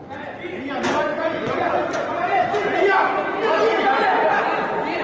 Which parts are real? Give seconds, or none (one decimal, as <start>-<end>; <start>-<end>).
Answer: 0.0-1.1; 1.7-5.0